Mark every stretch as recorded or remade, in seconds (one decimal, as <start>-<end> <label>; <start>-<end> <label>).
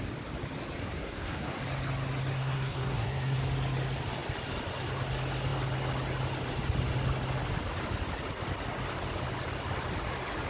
0.0-0.8 recorded; 0.8-1.6 remade; 1.6-2.3 recorded; 2.3-3.4 remade; 3.4-10.5 recorded